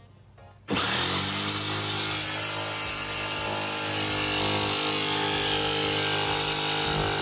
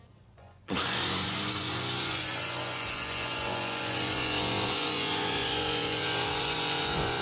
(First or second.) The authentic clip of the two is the first